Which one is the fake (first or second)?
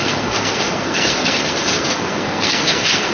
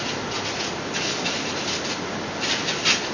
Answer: first